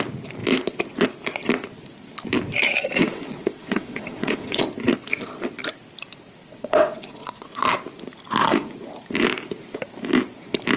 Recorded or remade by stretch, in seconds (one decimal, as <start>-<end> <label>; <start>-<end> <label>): 0.0-3.0 recorded; 3.0-4.6 remade; 4.6-6.4 recorded; 6.4-7.6 remade; 7.6-10.8 recorded